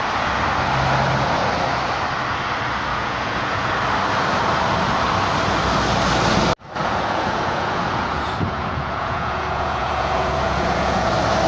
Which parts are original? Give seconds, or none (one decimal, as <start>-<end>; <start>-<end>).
0.0-2.9; 3.7-6.8; 11.1-11.5